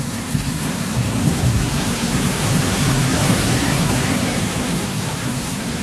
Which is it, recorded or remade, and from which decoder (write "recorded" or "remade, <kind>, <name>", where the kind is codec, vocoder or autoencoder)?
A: remade, codec, SNAC